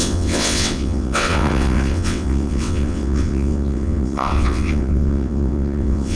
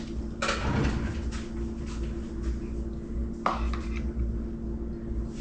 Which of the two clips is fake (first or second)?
first